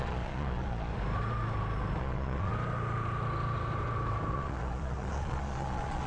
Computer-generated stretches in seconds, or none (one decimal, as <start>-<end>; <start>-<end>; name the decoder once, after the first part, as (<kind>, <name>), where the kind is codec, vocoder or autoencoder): 0.0-0.9 (vocoder, Vocos); 2.0-2.5; 4.3-6.1